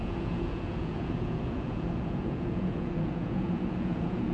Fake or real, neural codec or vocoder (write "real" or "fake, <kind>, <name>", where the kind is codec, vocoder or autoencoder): fake, vocoder, Vocos